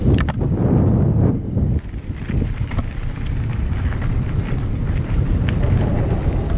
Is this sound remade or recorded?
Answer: recorded